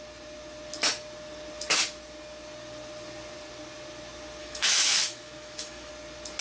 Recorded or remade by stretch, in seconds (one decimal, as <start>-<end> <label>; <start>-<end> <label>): 0.0-4.4 recorded; 4.4-5.9 remade; 5.9-6.4 recorded